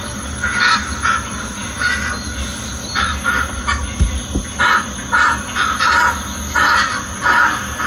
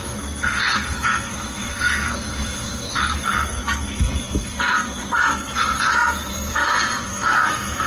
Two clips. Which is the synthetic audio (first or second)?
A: second